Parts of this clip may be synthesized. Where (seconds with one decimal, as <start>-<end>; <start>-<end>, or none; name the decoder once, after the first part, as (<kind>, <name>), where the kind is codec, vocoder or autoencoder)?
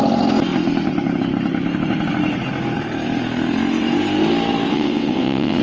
4.7-5.6 (vocoder, WaveNeXt)